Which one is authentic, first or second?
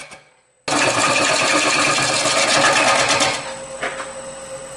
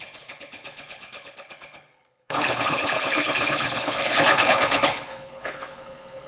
first